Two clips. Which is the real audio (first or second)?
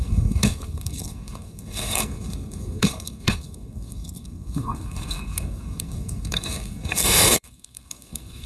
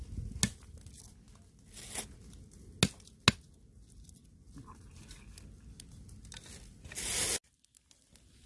second